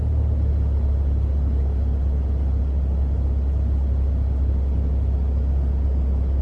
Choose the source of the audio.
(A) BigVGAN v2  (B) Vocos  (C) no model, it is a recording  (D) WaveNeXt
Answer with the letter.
C